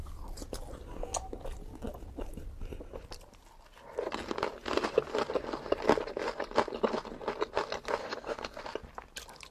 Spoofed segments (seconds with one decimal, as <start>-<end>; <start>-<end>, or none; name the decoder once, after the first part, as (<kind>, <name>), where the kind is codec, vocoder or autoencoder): 8.0-8.6 (codec, DAC)